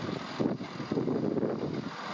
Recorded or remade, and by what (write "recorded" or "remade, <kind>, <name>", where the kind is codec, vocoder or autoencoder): recorded